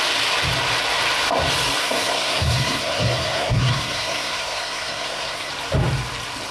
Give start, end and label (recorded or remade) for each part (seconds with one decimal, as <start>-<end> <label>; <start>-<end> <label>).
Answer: 0.0-1.8 recorded; 1.8-5.5 remade; 5.5-6.5 recorded